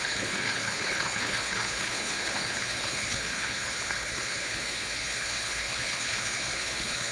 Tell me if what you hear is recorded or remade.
remade